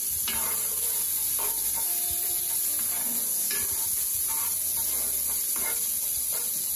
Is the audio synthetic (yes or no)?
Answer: no